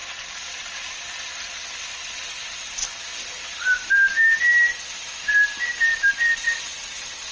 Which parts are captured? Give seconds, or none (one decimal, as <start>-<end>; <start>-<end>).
0.0-7.3